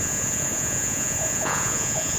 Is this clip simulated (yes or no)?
yes